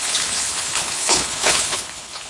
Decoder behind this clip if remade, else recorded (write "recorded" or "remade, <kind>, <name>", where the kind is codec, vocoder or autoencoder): remade, codec, HILCodec